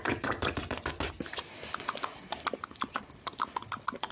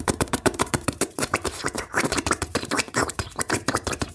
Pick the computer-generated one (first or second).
second